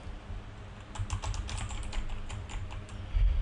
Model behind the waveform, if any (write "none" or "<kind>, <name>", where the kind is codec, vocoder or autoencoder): none